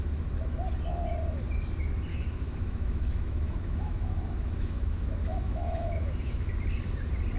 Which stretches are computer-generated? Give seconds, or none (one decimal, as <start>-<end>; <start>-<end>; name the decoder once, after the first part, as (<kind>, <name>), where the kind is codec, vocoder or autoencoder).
2.1-6.5 (autoencoder, DAC-VAE)